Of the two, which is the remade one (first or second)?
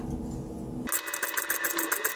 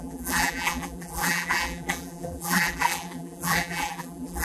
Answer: second